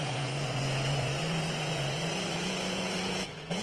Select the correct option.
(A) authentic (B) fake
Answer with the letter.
B